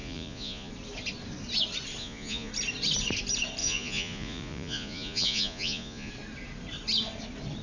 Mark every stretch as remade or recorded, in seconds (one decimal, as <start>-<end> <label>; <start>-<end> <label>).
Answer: 0.0-0.7 remade; 0.7-2.0 recorded; 2.0-2.5 remade; 2.5-3.6 recorded; 3.6-6.1 remade; 6.1-7.6 recorded